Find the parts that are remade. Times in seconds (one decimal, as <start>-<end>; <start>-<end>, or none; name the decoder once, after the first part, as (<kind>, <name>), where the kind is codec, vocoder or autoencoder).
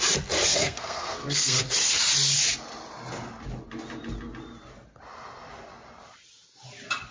0.5-1.6 (codec, SNAC)